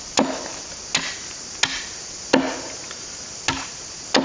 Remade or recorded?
recorded